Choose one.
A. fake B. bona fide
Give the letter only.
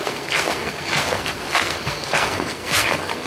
A